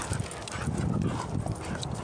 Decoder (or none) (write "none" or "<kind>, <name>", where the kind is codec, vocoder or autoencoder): none